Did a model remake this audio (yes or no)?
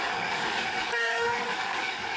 yes